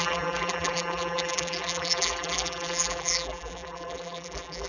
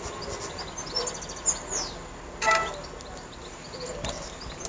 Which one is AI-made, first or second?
first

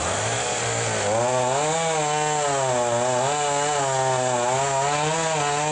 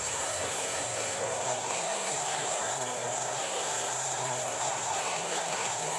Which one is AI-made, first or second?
second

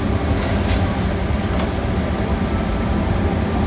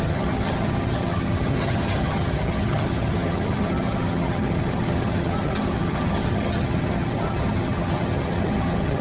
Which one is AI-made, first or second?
second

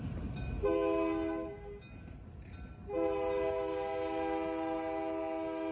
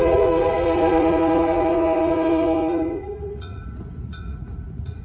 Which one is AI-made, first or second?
second